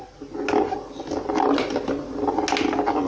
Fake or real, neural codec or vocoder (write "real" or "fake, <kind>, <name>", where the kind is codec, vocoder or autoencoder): real